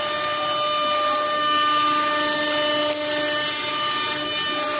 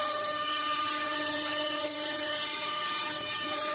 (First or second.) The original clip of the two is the first